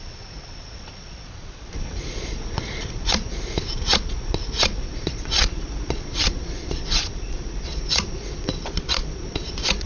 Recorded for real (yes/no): no